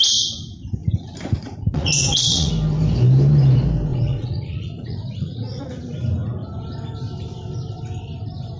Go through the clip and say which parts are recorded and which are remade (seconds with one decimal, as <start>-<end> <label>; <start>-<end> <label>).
0.0-0.8 recorded; 0.8-2.5 remade; 2.5-3.9 recorded; 3.9-5.6 remade; 5.6-8.6 recorded

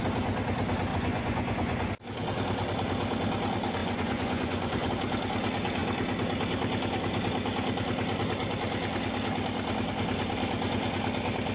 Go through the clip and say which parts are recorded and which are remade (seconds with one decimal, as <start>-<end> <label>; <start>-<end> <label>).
0.0-0.9 recorded; 0.9-1.9 remade; 1.9-3.8 recorded; 3.8-4.9 remade; 4.9-11.5 recorded